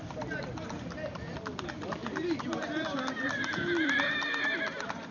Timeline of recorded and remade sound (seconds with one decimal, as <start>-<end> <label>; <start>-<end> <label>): 0.0-5.1 remade